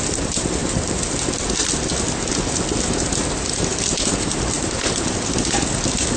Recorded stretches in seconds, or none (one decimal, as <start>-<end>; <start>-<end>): 0.0-6.2